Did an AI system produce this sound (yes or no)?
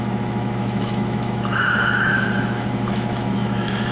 yes